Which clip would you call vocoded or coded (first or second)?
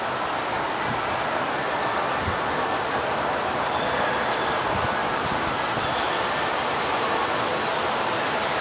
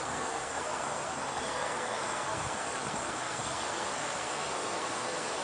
second